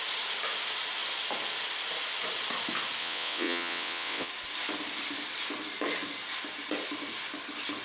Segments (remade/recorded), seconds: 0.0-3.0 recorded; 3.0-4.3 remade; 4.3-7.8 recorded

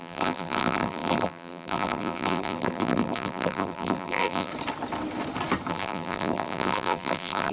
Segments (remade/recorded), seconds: 0.0-4.5 remade; 4.5-5.7 recorded; 5.7-7.5 remade

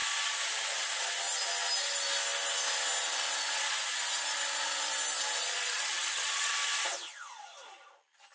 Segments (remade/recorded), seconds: 0.0-5.4 recorded; 5.4-6.5 remade; 6.5-8.3 recorded

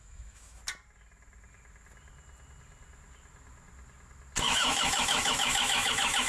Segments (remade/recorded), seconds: 0.0-0.6 remade; 0.6-4.4 recorded; 4.4-6.3 remade

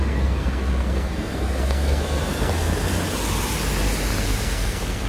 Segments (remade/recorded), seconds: 0.0-2.9 remade; 2.9-4.2 recorded; 4.2-5.1 remade